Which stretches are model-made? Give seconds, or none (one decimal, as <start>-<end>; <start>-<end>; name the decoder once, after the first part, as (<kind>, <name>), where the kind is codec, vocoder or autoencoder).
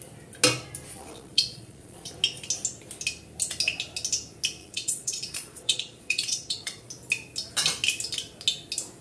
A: 0.9-2.1 (vocoder, Vocos); 4.6-6.9